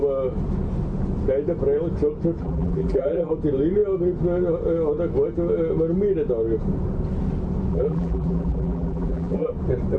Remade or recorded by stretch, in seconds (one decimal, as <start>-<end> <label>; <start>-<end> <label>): 0.0-2.4 recorded; 2.4-3.3 remade; 3.3-7.7 recorded; 7.7-9.5 remade; 9.5-10.0 recorded